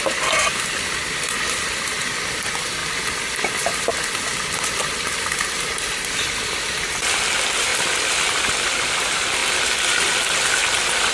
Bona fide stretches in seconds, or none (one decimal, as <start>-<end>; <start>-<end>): 9.4-10.3